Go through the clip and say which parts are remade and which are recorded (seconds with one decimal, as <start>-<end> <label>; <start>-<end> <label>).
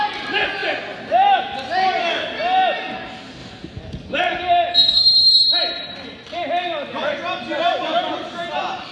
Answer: 0.0-4.7 recorded; 4.7-5.3 remade; 5.3-8.9 recorded